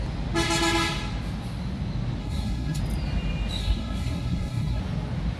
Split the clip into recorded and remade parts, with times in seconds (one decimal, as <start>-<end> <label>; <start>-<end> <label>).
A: 0.0-2.2 recorded; 2.2-2.8 remade; 2.8-3.6 recorded; 3.6-4.8 remade; 4.8-5.4 recorded